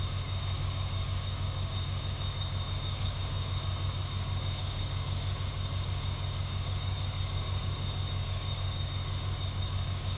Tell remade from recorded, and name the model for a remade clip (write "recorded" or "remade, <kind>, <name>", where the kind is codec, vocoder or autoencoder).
remade, codec, DAC